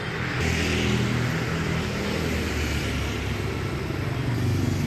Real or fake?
real